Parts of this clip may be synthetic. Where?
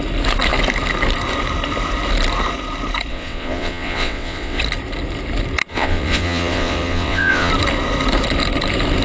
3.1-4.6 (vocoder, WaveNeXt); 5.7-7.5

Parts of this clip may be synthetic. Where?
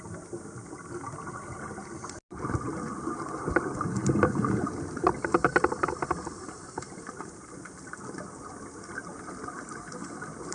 none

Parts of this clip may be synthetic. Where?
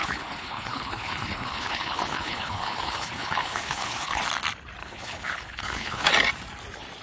0.0-4.2 (codec, HILCodec); 4.8-6.1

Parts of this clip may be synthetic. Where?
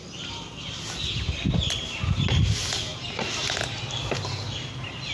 none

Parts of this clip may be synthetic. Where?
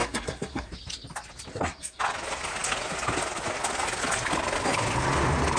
0.0-0.7 (codec, SNAC); 1.5-2.0